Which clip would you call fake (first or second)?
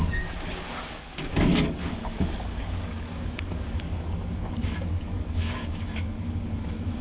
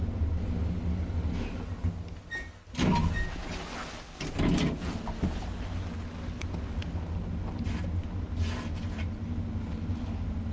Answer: first